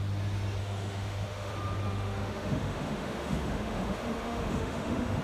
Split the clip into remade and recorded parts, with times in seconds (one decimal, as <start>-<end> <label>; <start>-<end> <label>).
0.0-0.6 recorded; 0.6-1.5 remade; 1.5-1.9 recorded; 1.9-5.2 remade

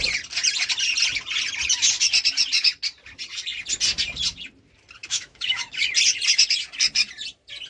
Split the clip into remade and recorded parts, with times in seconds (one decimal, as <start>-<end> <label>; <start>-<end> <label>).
0.0-5.0 recorded; 5.0-5.9 remade; 5.9-7.7 recorded